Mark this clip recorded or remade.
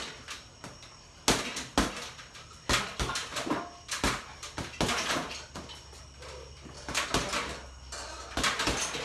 recorded